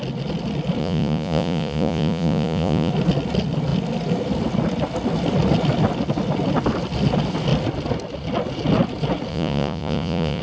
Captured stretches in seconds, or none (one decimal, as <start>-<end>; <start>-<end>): 0.0-0.8; 2.9-9.3